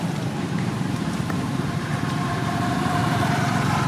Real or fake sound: fake